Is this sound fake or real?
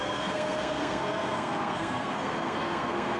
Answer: fake